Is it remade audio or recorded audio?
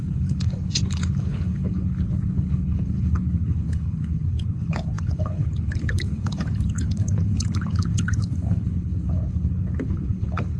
remade